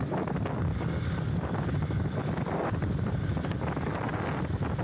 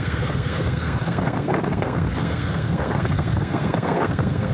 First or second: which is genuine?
first